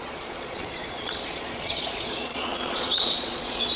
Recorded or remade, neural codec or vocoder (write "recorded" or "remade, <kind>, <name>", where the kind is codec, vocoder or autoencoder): remade, vocoder, Vocos